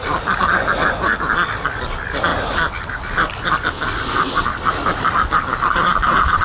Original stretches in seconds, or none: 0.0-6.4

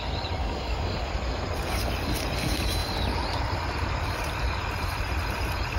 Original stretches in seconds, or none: 0.0-0.4; 1.1-5.8

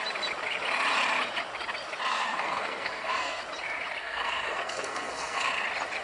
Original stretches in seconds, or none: 0.0-2.1; 3.4-4.0; 5.5-6.0

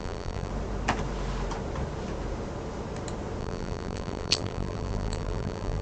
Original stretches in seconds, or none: 0.5-3.4

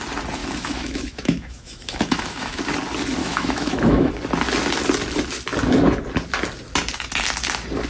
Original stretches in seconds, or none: 0.0-0.4; 2.6-3.2; 4.1-7.9

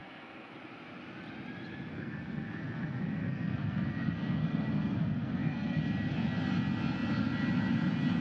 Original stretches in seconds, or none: 0.5-1.9; 5.8-8.2